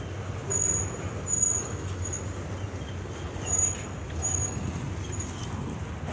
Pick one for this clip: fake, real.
real